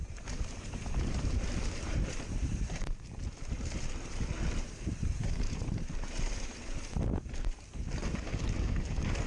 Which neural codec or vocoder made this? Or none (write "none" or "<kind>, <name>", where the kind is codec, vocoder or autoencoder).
vocoder, BigVGAN v2